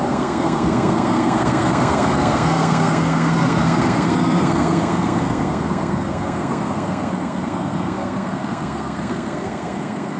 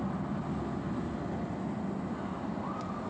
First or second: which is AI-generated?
first